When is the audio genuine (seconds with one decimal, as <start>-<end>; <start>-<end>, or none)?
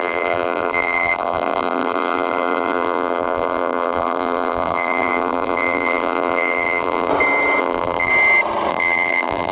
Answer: 7.1-7.6; 8.1-8.7